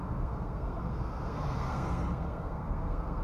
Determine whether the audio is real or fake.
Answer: fake